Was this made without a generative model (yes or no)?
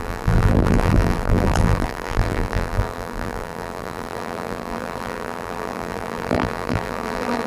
no